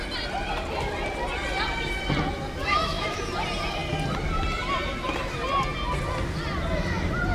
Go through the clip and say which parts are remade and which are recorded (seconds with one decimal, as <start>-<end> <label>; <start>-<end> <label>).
0.0-2.6 recorded; 2.6-3.2 remade; 3.2-7.3 recorded